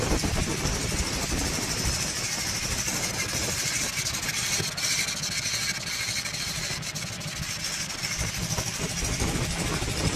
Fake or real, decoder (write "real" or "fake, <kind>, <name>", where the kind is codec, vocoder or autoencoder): real